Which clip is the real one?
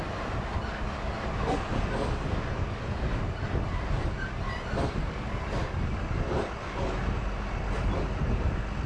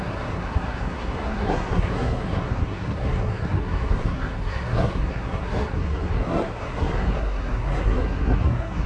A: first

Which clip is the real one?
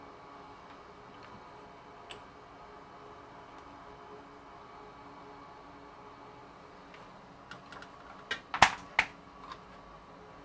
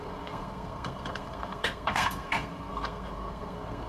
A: first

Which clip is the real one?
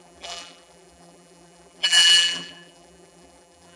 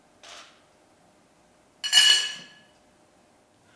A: second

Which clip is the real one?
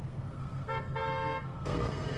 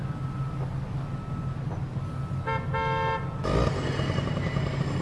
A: second